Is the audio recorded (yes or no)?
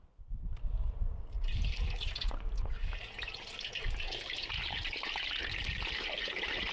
no